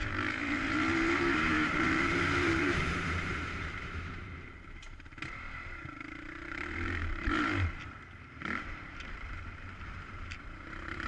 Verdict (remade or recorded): remade